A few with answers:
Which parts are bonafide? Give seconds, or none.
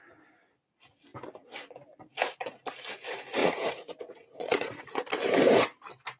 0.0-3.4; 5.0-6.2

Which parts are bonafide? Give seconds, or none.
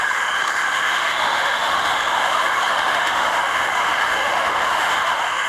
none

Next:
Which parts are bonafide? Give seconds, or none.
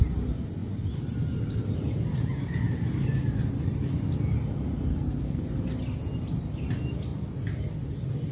0.0-4.9; 5.4-8.3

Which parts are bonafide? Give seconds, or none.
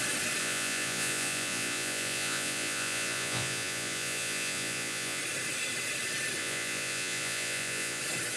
0.0-0.4; 5.2-6.4; 8.0-8.4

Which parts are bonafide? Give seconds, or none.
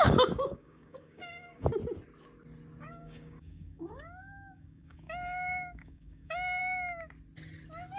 1.7-2.8; 6.6-8.0